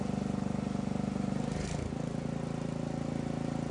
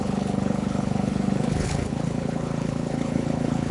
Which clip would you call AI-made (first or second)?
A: second